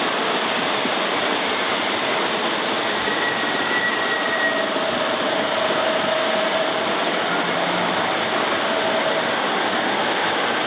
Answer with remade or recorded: recorded